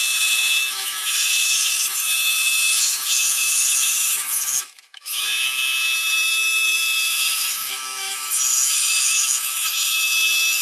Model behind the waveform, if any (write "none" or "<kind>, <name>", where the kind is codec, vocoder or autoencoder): autoencoder, DAC-VAE